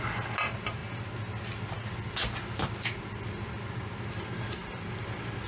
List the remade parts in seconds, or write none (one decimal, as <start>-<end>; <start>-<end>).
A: none